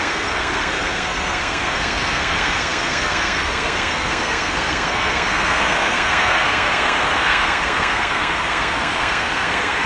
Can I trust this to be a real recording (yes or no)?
no